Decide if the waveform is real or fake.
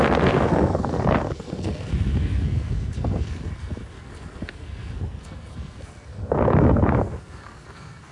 fake